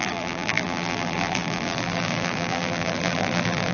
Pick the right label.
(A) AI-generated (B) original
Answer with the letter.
A